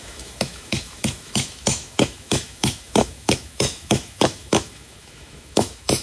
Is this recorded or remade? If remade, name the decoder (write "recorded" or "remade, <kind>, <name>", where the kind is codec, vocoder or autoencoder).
remade, autoencoder, DAC-VAE